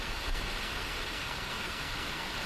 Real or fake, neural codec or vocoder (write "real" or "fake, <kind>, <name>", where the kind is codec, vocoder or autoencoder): fake, codec, SNAC